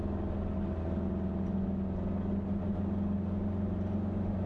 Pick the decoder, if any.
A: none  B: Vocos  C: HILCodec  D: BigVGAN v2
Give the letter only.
A